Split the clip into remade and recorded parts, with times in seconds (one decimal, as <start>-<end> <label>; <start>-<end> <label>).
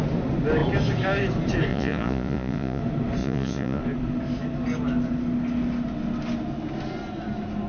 0.0-1.7 recorded; 1.7-2.8 remade; 2.8-3.2 recorded; 3.2-3.8 remade; 3.8-7.7 recorded